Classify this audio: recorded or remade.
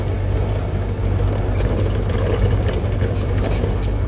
recorded